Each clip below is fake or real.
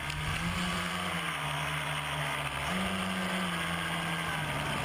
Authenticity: real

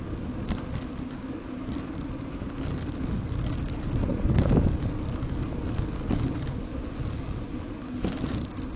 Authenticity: real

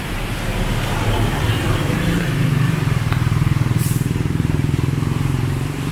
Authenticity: fake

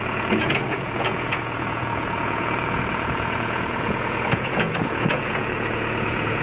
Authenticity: fake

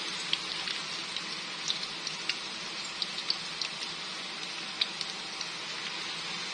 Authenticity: real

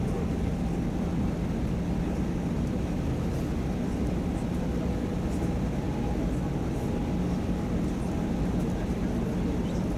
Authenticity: real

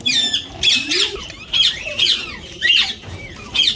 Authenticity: fake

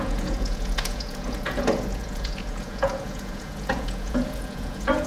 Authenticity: fake